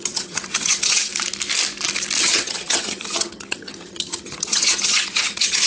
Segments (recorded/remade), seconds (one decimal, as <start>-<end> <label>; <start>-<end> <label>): 0.0-1.1 remade; 1.1-2.2 recorded; 2.2-5.7 remade